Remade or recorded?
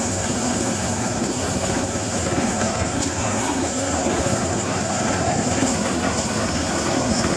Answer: remade